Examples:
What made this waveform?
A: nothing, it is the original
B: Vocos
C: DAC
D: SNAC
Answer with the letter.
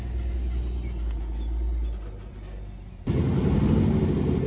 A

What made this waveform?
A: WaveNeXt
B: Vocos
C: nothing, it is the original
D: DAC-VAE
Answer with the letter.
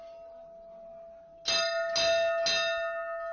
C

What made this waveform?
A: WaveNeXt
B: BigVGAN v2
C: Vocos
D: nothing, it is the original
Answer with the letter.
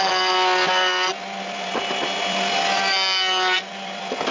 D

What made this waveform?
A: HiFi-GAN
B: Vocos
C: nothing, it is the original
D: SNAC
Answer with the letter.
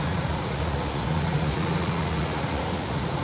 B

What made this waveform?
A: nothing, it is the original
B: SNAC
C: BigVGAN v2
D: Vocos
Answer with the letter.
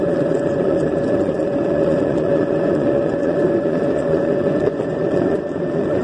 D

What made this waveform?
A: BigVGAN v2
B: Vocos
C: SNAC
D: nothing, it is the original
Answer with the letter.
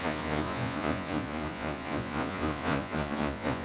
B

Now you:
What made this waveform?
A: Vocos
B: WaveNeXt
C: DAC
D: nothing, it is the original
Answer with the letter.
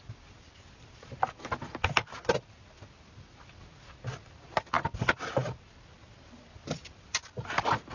D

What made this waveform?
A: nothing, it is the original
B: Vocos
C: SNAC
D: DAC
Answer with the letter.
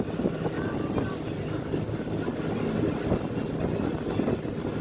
A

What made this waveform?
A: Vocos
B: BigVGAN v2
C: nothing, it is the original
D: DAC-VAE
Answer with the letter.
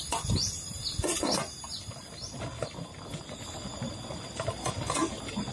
C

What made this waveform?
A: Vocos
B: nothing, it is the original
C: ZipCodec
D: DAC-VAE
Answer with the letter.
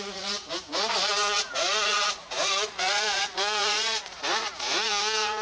A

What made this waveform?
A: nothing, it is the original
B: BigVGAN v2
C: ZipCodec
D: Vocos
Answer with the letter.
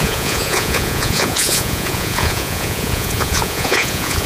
D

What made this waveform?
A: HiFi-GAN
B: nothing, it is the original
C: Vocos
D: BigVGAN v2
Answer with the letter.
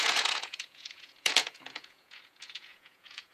C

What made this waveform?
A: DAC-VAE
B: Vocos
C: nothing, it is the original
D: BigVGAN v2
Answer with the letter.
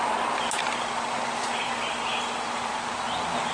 C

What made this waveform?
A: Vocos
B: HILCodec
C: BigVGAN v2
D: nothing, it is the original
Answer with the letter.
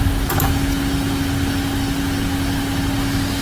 D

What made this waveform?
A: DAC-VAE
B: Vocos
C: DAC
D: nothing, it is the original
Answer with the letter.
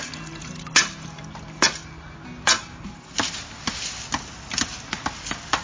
D